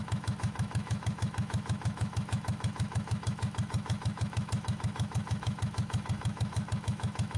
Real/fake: fake